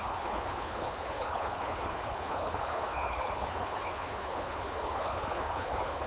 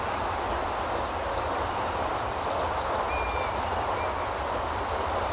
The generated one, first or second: first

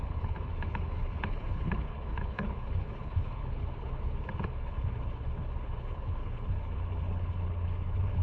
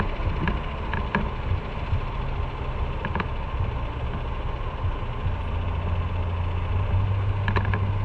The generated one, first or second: first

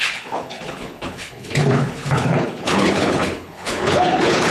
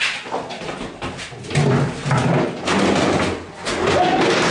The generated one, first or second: first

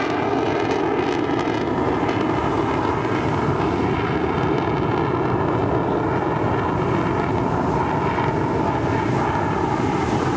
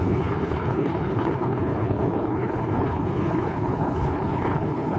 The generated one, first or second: second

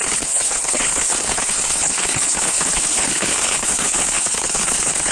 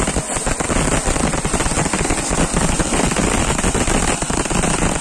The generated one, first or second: first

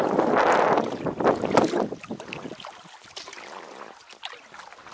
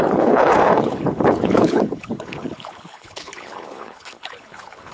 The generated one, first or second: second